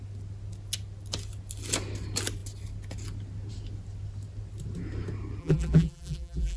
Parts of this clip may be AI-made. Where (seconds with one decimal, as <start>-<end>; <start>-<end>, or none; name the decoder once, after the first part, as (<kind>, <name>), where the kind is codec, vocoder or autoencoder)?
5.4-6.6 (vocoder, BigVGAN v2)